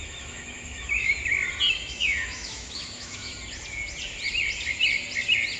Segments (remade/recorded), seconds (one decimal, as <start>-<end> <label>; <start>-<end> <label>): 0.0-1.1 remade; 1.1-1.7 recorded; 1.7-3.3 remade; 3.3-5.6 recorded